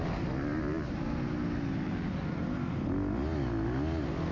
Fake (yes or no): no